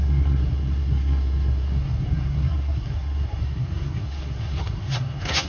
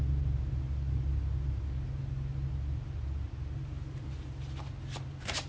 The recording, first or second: second